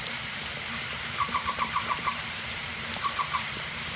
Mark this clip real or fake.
fake